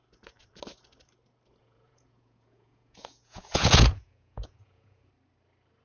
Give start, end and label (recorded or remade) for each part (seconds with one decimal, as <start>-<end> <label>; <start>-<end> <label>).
0.0-1.6 recorded; 1.6-5.1 remade; 5.1-5.8 recorded